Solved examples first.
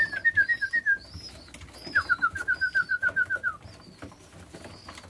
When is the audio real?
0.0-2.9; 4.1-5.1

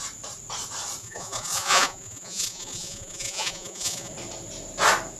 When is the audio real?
0.0-1.0; 4.1-5.2

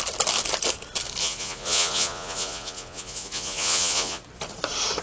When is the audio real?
0.0-1.2; 4.2-5.0

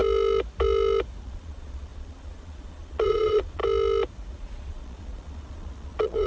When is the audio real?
0.0-1.2; 3.6-4.3

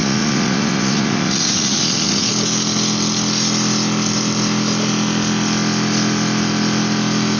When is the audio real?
2.3-7.4

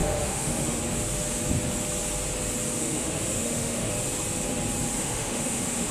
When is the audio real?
0.8-2.8; 3.9-5.0

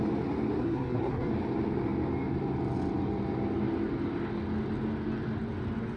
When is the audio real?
0.0-0.6; 1.3-6.0